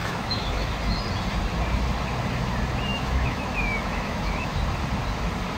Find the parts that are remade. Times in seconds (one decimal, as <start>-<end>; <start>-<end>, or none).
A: 0.0-0.7; 2.9-4.6